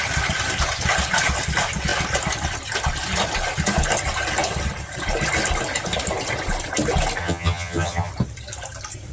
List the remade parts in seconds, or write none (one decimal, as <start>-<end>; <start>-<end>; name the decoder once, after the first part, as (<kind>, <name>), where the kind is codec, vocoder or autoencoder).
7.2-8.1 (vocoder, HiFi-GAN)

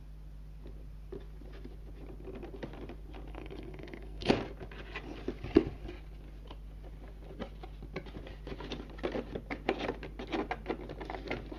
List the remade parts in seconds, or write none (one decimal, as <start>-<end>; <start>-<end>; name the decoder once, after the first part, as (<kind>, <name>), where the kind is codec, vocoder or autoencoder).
3.3-4.3 (codec, SNAC)

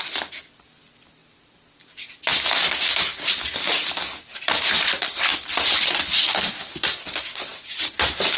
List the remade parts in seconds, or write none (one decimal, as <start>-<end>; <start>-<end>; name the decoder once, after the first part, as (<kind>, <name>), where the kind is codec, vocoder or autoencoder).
5.3-6.0 (vocoder, BigVGAN v2)

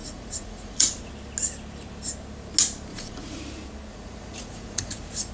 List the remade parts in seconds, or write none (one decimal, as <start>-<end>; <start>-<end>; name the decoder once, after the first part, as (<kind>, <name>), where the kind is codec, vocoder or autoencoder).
0.0-1.1 (vocoder, Vocos); 2.9-3.4; 3.9-5.3

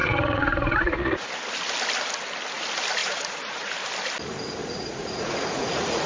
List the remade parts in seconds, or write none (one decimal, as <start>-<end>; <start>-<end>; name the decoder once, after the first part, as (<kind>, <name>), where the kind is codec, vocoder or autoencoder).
0.0-1.3 (vocoder, Vocos); 3.0-3.7; 4.6-6.1

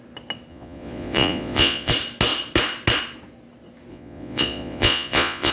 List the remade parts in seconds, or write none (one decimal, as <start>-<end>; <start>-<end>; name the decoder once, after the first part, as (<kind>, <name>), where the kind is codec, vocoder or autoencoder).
0.5-1.9 (vocoder, Vocos); 3.9-5.5

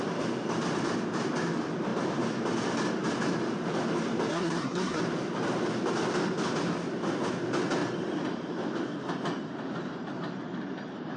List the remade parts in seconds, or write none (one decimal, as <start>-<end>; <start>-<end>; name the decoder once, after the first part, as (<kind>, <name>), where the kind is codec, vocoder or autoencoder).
4.3-5.0 (codec, SNAC)

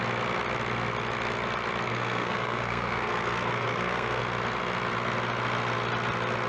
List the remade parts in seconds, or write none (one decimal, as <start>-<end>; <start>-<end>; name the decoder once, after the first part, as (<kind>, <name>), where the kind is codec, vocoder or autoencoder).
1.9-4.2 (codec, SNAC)